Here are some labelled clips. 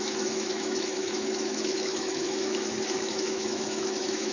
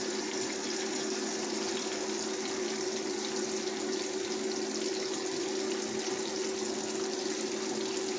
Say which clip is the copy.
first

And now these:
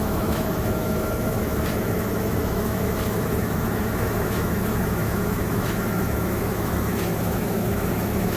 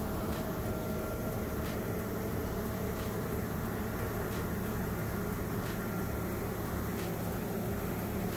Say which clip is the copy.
first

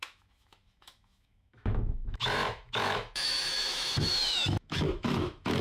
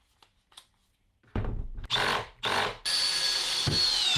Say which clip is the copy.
first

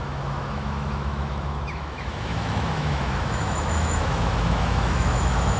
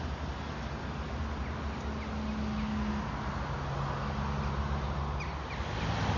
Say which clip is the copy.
first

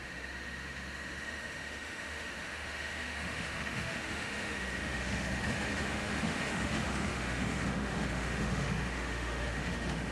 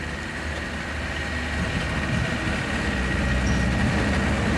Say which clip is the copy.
first